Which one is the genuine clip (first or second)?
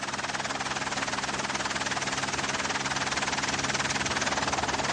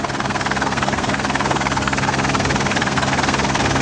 first